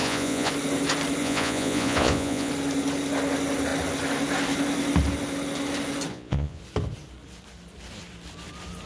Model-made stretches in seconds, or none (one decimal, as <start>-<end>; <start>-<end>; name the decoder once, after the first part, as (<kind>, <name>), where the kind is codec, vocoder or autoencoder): 0.0-0.5 (vocoder, Vocos); 1.2-2.5; 6.1-6.6